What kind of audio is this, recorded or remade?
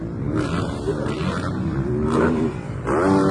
recorded